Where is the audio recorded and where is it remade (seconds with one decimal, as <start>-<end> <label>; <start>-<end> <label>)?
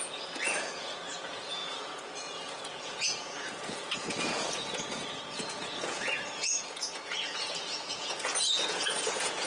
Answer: 0.0-9.5 remade